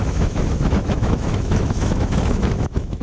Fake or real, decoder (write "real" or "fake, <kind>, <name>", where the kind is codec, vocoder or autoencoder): fake, autoencoder, DAC-VAE